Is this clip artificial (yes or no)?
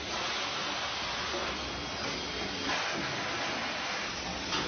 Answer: no